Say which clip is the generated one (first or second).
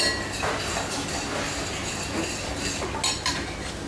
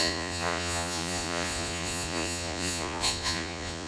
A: second